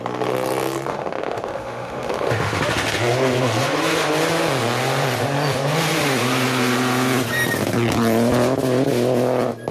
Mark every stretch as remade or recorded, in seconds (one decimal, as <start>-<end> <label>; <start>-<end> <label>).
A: 0.0-0.9 recorded; 0.9-2.6 remade; 2.6-9.7 recorded